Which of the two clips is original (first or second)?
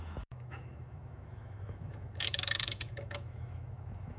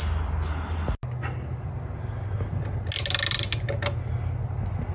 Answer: second